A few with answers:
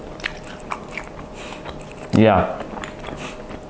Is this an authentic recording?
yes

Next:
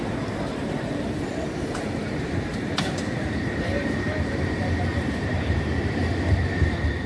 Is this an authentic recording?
no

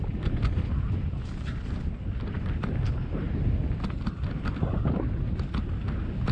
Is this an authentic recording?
yes